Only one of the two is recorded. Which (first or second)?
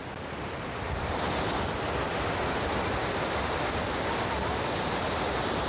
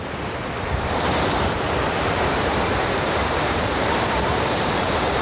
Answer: first